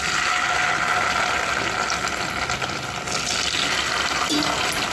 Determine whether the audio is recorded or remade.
recorded